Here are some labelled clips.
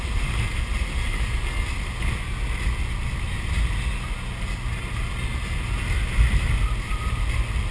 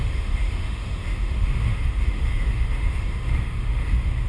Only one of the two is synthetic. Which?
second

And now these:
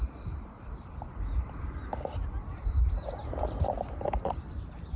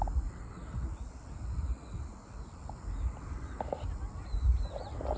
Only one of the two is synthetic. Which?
first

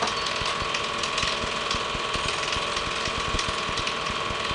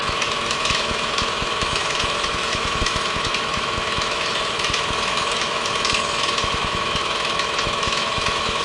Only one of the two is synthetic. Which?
second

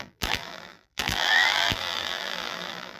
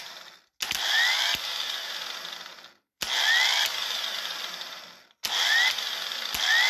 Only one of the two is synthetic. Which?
first